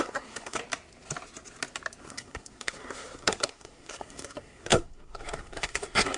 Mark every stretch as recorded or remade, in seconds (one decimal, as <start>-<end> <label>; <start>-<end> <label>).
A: 0.0-0.6 remade; 0.6-2.0 recorded; 2.0-6.2 remade